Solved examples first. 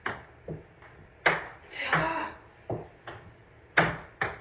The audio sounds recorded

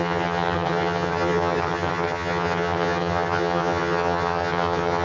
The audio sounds remade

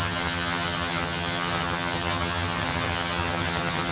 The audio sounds remade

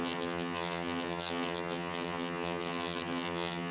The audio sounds remade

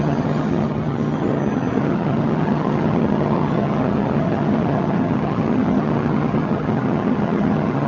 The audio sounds remade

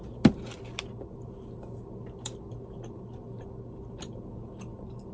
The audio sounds recorded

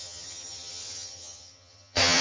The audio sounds remade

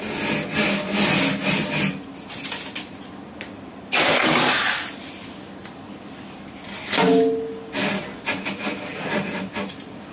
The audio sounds recorded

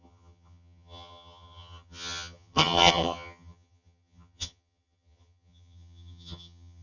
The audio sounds remade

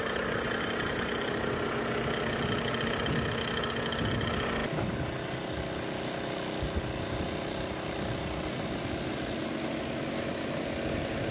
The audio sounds recorded